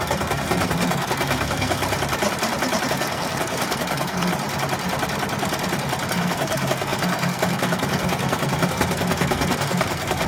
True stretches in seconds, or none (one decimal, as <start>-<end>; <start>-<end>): 1.8-2.9; 4.3-6.1

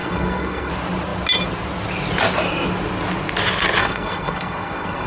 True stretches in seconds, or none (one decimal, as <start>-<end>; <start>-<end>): 0.7-3.8

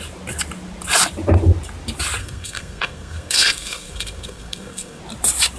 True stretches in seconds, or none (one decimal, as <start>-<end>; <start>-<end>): 0.0-2.2; 5.0-5.6

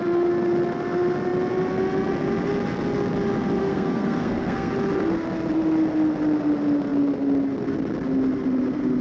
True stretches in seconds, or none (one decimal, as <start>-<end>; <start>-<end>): 0.0-3.6; 4.7-9.0

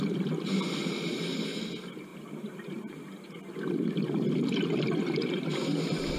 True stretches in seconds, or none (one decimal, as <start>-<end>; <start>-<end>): 0.0-6.2

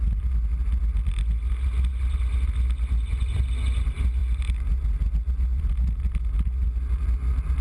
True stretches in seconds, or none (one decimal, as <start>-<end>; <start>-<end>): 0.0-7.6

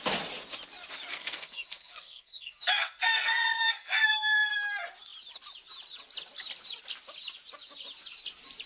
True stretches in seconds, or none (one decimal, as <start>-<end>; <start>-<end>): 0.0-1.1; 4.5-8.7

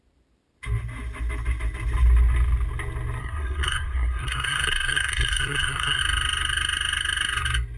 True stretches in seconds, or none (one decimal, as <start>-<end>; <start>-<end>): 0.0-3.2; 6.0-7.8